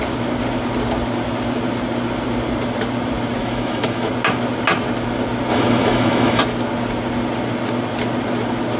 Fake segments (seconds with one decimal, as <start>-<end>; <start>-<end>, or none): 3.4-4.1; 5.5-6.4